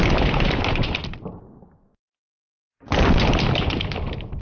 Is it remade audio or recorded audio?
recorded